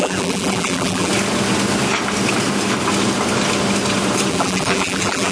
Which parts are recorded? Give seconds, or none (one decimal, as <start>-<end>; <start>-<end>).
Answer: 1.1-4.3